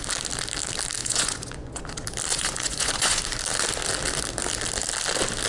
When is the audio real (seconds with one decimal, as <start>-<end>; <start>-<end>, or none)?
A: 0.0-1.0; 1.8-2.3; 3.2-5.5